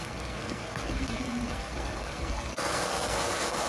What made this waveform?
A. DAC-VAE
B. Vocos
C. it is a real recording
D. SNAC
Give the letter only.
D